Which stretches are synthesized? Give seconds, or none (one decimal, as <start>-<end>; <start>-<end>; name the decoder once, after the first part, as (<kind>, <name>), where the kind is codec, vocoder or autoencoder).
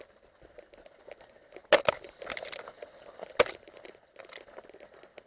none